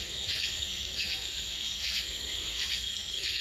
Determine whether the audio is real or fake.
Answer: fake